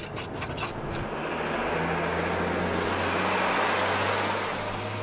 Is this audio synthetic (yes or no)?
no